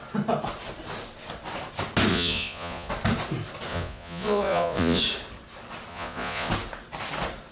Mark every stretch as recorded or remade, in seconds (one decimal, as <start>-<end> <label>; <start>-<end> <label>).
0.0-2.1 recorded; 2.1-2.9 remade; 2.9-3.7 recorded; 3.7-5.0 remade; 5.0-5.9 recorded; 5.9-6.5 remade; 6.5-7.5 recorded

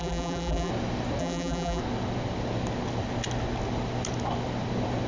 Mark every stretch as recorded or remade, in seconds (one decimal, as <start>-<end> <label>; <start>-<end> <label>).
0.0-0.7 remade; 0.7-1.2 recorded; 1.2-1.8 remade; 1.8-5.1 recorded

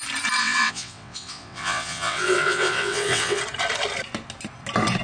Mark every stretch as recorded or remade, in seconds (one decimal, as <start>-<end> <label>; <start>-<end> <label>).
0.0-0.4 recorded; 0.4-3.4 remade; 3.4-5.0 recorded

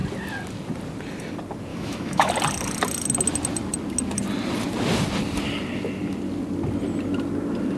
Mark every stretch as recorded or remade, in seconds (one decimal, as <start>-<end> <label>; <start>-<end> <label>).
0.0-1.7 recorded; 1.7-2.3 remade; 2.3-7.8 recorded

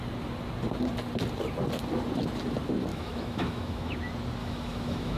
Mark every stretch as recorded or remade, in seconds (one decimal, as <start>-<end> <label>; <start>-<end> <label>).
0.0-2.9 recorded; 2.9-3.9 remade; 3.9-4.4 recorded; 4.4-5.2 remade

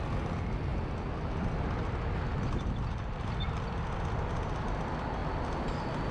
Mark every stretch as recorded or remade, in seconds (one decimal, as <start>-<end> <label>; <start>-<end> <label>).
0.0-6.1 recorded